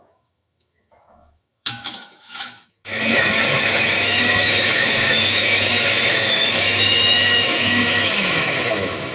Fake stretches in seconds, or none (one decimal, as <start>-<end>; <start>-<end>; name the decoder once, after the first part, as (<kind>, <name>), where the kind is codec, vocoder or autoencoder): 0.0-9.1 (autoencoder, DAC-VAE)